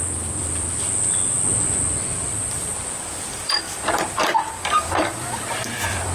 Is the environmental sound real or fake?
fake